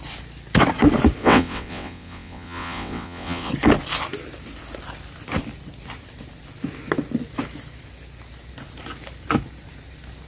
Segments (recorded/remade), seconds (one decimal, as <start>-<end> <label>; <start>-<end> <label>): 0.0-1.2 recorded; 1.2-3.5 remade; 3.5-10.3 recorded